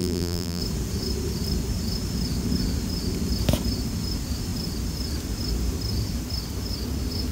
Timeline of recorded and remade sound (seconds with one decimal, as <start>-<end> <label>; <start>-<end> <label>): 0.0-0.6 remade; 0.6-7.3 recorded